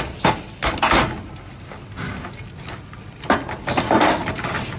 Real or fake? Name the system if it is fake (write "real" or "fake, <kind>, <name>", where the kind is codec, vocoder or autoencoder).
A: real